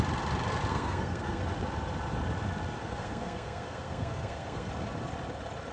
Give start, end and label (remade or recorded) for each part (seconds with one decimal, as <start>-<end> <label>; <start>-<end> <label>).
0.0-0.7 recorded; 0.7-1.4 remade; 1.4-2.8 recorded; 2.8-4.7 remade; 4.7-5.7 recorded